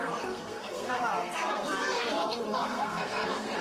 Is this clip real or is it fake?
fake